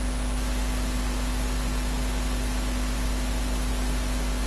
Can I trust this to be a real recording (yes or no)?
yes